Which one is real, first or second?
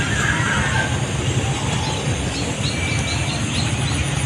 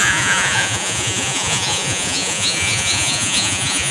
first